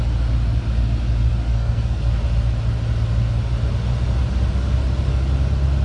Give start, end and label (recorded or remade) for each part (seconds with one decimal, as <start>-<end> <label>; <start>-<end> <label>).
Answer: 0.0-1.5 recorded; 1.5-2.1 remade; 2.1-5.8 recorded